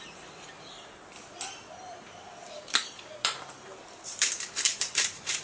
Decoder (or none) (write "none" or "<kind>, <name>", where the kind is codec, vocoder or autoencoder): vocoder, BigVGAN v2